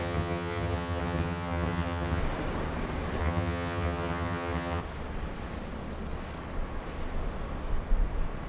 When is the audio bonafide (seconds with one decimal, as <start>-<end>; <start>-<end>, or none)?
2.2-3.2; 4.8-8.5